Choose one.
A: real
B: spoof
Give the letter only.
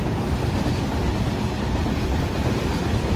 A